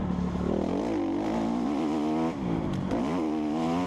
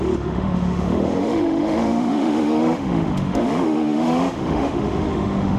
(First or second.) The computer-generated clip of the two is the second